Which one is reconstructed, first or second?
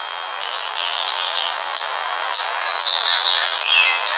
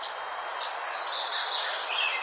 first